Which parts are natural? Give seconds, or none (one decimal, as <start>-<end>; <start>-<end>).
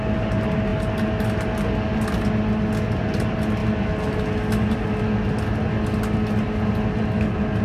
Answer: 0.0-7.6